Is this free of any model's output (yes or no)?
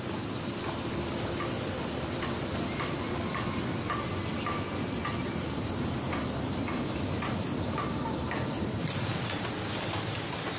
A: yes